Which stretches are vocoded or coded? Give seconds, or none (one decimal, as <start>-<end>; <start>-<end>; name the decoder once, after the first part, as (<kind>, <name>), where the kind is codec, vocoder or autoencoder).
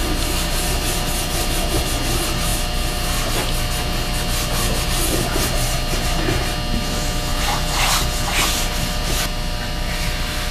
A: none